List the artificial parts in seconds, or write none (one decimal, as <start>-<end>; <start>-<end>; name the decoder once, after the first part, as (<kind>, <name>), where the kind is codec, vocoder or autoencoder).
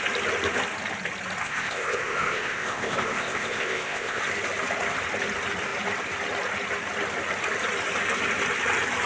1.4-4.2 (codec, ZipCodec)